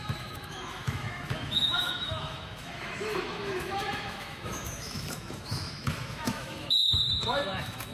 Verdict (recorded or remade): remade